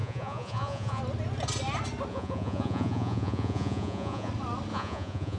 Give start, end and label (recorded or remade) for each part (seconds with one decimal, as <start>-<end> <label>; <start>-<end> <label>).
0.0-1.0 remade; 1.0-2.1 recorded; 2.1-4.3 remade; 4.3-4.7 recorded; 4.7-5.4 remade